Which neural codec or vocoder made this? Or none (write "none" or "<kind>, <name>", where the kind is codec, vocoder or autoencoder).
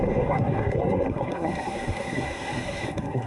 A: codec, SNAC